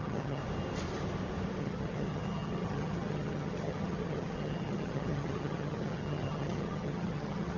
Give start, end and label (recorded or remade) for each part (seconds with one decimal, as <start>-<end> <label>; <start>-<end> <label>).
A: 0.0-0.4 remade; 0.4-1.6 recorded; 1.6-7.6 remade